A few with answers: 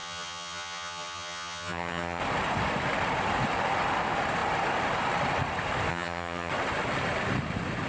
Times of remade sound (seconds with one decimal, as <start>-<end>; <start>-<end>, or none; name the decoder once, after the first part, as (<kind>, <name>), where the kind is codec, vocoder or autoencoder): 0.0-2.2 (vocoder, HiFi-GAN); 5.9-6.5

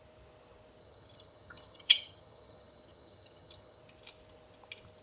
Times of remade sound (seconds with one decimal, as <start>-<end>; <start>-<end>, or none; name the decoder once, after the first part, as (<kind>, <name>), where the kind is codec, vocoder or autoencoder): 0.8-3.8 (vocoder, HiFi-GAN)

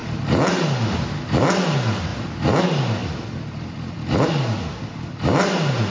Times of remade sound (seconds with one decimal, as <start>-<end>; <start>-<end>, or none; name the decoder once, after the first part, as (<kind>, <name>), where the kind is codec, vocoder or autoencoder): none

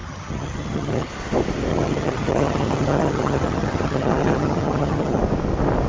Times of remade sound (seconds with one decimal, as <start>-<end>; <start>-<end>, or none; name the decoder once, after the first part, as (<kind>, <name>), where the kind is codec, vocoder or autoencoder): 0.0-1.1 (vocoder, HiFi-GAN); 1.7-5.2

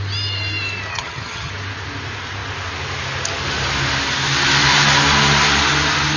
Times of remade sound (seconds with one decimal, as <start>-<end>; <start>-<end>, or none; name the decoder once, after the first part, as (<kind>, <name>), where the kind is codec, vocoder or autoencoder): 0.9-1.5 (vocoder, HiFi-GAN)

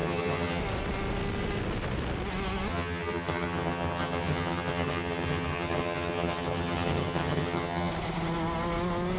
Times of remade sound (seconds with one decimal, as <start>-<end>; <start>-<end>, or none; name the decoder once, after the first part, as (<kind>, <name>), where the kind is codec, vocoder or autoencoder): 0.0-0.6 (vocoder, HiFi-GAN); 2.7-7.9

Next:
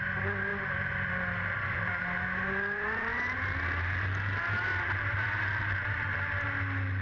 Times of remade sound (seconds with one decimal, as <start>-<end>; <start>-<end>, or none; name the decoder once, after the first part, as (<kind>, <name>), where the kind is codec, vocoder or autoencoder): none